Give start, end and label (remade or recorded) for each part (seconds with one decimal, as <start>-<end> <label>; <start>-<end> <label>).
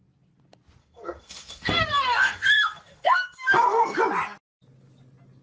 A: 0.0-0.8 recorded; 0.8-4.0 remade; 4.0-5.4 recorded